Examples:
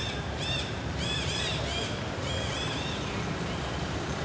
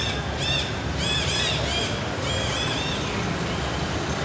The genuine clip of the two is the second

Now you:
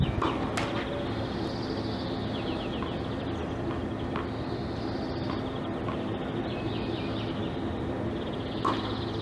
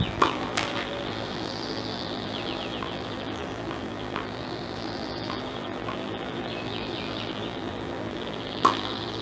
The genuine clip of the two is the first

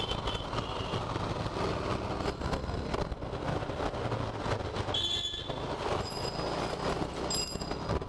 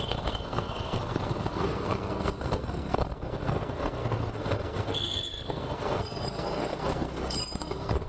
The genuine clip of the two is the first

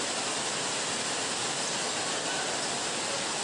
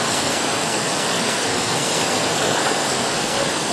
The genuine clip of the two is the first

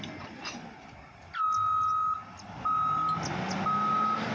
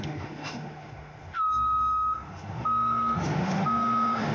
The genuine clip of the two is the first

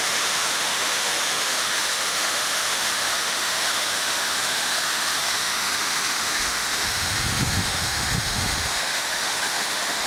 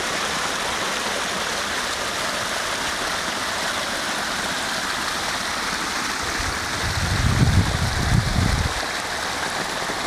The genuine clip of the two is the second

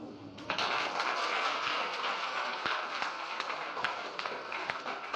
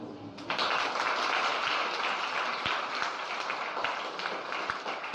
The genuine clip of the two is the second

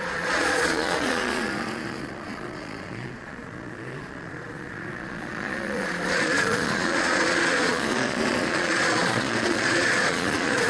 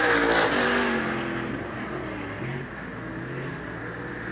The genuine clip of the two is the second